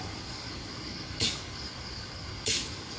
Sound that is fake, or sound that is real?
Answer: fake